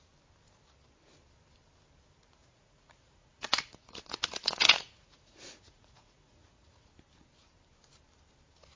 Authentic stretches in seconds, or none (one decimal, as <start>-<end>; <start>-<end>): 0.0-2.4; 6.9-8.8